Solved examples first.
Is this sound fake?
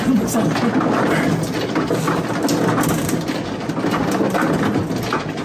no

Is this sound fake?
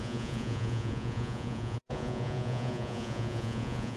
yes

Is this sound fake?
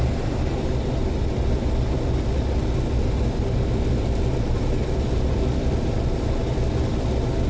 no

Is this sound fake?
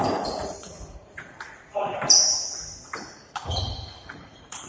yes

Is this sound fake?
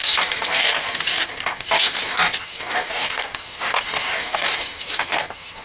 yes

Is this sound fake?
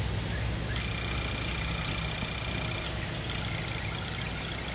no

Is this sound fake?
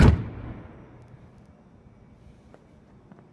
no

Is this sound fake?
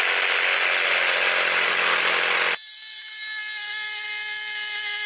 no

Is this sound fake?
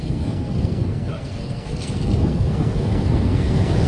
yes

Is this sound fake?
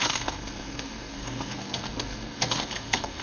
yes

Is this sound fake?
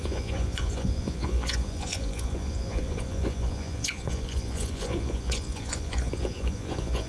yes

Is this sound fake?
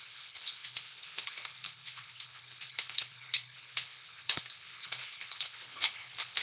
yes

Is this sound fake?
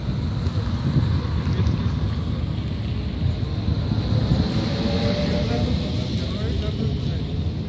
no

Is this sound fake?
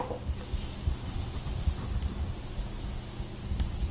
no